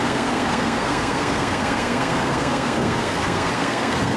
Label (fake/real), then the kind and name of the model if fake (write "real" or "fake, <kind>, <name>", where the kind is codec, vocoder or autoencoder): fake, codec, SNAC